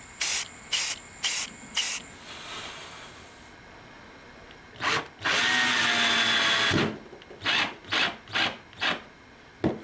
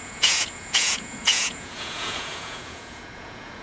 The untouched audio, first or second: first